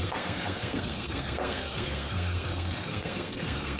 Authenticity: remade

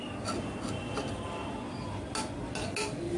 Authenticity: recorded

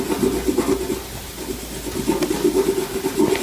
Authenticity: recorded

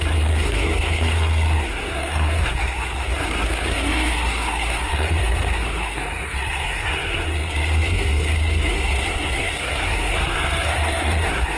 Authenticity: remade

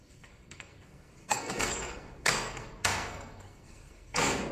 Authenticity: remade